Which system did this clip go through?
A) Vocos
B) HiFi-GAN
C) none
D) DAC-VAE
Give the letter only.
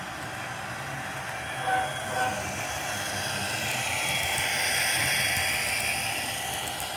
C